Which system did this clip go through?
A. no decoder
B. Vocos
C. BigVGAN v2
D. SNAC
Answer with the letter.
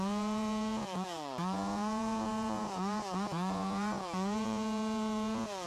B